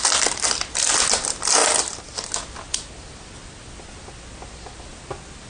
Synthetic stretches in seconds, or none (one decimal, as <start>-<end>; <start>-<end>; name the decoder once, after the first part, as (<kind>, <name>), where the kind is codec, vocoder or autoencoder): none